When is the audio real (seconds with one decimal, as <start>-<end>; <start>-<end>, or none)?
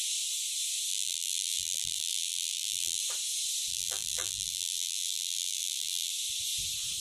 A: 0.0-0.9; 3.0-3.7; 6.1-7.0